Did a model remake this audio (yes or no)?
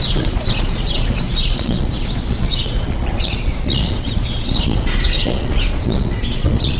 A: yes